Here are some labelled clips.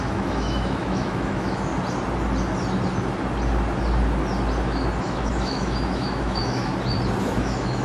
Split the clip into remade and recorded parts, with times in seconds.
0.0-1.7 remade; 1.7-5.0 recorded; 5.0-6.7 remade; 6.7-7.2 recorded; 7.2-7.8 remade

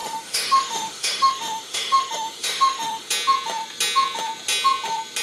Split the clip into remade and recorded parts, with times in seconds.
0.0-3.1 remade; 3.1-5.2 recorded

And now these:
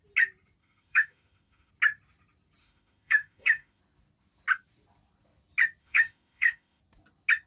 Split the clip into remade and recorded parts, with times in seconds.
0.0-0.6 recorded; 0.6-1.7 remade; 1.7-2.6 recorded; 2.6-3.8 remade; 3.8-5.8 recorded; 5.8-6.8 remade; 6.8-7.5 recorded